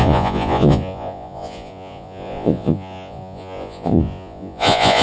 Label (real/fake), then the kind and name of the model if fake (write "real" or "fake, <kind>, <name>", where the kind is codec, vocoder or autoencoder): fake, vocoder, Vocos